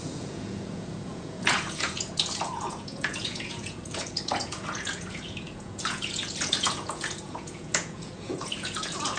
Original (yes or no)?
no